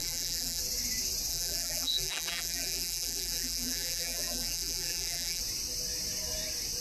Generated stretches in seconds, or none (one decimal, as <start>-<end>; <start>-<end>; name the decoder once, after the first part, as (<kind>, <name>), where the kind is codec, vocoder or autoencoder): 0.0-0.6 (vocoder, BigVGAN v2); 1.3-5.4